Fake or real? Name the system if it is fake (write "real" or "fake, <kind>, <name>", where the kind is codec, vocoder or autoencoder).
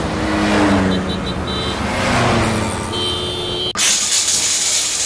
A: real